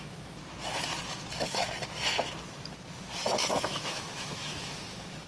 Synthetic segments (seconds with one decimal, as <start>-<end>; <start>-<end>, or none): 0.0-0.4; 3.6-5.3